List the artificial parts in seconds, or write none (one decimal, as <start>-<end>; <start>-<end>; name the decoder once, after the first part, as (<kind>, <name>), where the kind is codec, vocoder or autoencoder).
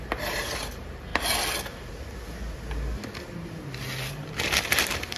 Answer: 0.0-1.1 (vocoder, BigVGAN v2); 4.1-5.2